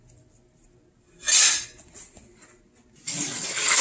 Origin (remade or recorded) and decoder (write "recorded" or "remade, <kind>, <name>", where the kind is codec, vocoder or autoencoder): recorded